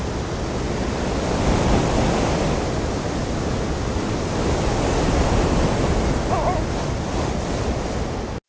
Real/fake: real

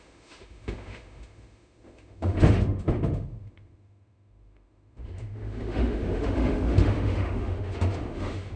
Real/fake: fake